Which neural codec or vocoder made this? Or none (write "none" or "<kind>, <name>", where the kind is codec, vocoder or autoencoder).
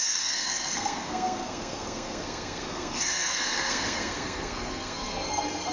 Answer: codec, SNAC